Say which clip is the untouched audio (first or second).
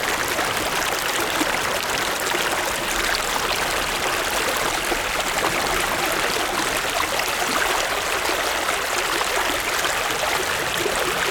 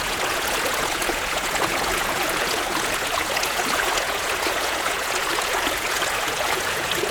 first